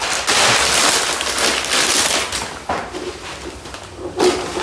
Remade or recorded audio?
recorded